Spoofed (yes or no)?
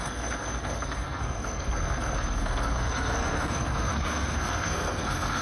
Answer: yes